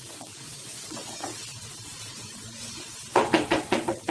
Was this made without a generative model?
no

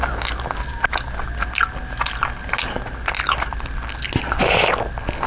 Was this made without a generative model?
yes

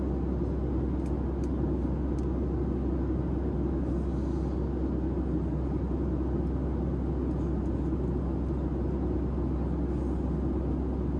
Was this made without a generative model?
yes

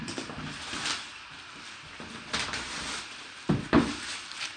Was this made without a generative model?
yes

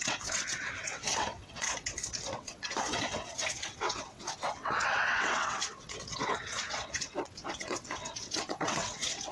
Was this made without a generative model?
no